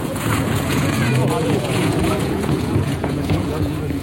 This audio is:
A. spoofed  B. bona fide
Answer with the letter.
A